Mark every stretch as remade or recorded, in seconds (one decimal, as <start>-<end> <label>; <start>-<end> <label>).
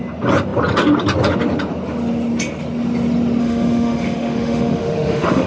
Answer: 0.0-3.4 recorded; 3.4-5.5 remade